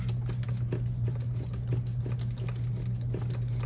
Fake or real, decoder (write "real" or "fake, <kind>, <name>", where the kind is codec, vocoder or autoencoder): real